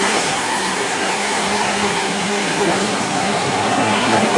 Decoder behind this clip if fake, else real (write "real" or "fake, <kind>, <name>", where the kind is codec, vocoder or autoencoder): fake, codec, SNAC